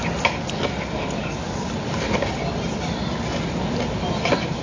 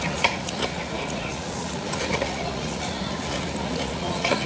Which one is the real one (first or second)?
first